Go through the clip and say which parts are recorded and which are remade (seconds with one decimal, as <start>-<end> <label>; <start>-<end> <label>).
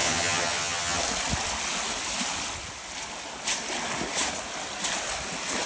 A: 0.0-1.0 remade; 1.0-5.7 recorded